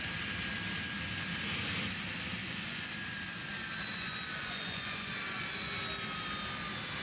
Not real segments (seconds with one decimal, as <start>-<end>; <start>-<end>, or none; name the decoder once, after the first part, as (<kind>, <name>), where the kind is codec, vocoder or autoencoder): 2.4-2.9 (vocoder, Vocos); 3.9-5.4